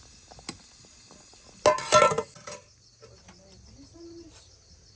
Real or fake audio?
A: real